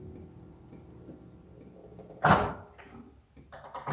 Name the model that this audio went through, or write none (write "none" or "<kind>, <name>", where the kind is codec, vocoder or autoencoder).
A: none